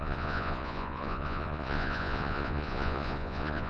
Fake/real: fake